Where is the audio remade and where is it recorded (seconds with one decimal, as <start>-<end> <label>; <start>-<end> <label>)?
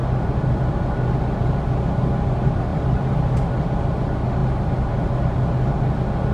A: 0.0-0.6 remade; 0.6-2.7 recorded; 2.7-3.5 remade; 3.5-6.3 recorded